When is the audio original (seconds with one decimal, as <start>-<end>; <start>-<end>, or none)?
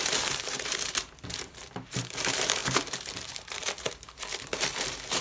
none